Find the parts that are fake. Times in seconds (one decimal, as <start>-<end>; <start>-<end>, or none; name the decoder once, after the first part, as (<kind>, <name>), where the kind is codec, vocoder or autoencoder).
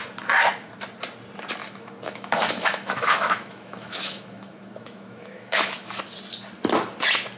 1.6-6.0 (autoencoder, DAC-VAE)